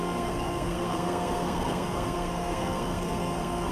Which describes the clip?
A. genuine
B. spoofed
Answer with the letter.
B